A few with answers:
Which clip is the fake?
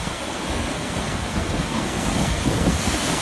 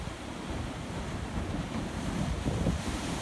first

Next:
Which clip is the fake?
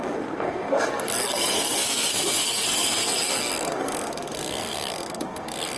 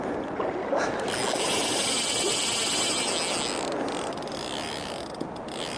first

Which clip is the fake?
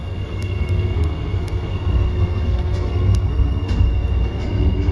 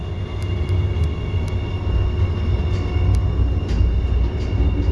first